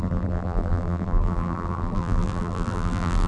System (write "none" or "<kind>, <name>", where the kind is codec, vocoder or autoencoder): vocoder, BigVGAN v2